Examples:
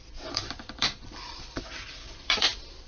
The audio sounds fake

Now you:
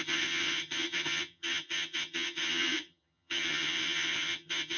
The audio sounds fake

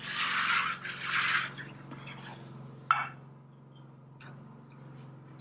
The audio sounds real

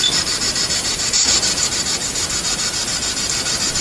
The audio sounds real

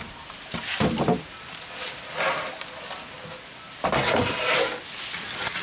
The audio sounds real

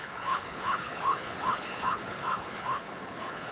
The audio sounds fake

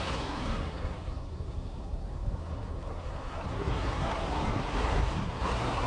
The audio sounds fake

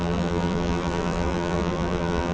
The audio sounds fake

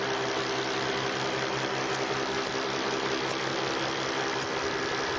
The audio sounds real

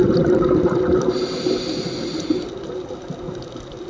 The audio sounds real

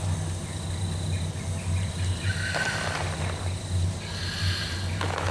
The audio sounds real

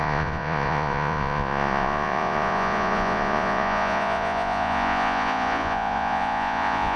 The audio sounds fake